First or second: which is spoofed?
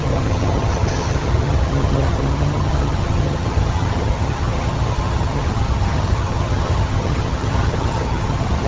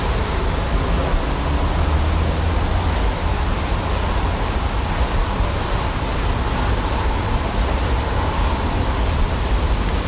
first